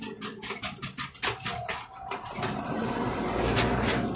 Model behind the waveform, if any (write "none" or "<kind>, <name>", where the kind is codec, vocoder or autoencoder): none